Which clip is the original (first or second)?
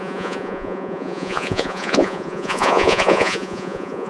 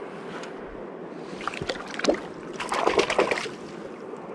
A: second